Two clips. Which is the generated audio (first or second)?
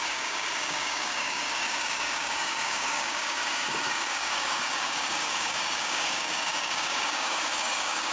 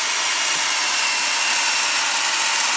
first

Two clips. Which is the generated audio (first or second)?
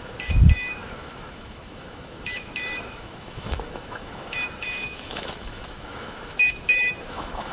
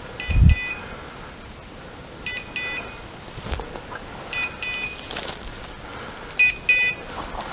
first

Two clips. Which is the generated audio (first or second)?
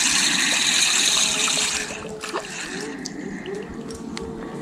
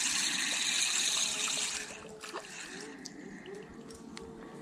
first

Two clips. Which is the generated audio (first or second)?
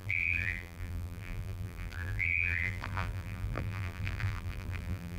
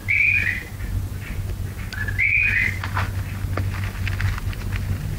first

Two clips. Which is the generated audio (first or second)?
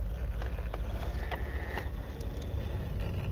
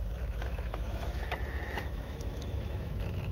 second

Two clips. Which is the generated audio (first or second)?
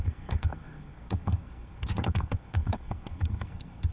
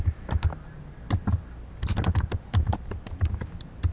first